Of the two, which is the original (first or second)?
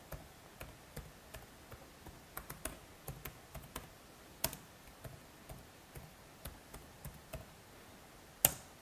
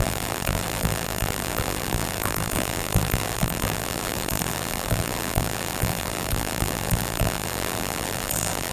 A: first